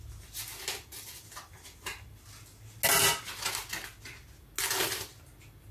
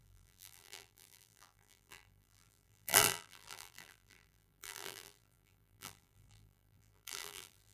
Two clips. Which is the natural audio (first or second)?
first